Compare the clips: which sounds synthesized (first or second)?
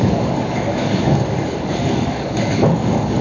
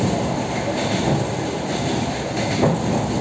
first